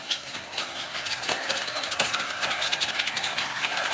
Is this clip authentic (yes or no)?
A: no